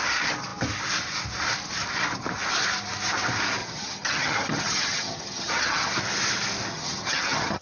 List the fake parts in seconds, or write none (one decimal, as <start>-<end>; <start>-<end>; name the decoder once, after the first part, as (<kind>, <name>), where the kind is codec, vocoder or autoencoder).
3.6-5.9 (vocoder, HiFi-GAN); 6.7-7.6